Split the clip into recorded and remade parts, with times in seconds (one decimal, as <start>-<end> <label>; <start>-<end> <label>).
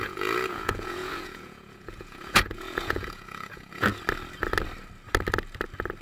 0.0-3.9 remade; 3.9-6.0 recorded